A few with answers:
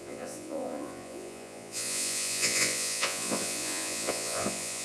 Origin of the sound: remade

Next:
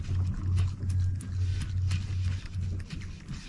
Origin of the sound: recorded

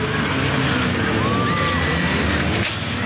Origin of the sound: recorded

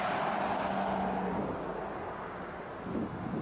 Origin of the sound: recorded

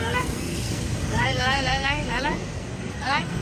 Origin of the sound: remade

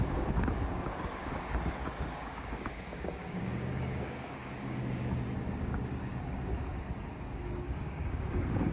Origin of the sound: remade